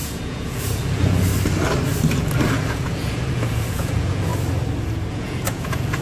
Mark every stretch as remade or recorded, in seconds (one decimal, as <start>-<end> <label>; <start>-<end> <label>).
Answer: 0.0-1.3 remade; 1.3-2.5 recorded; 2.5-4.3 remade; 4.3-5.1 recorded; 5.1-6.0 remade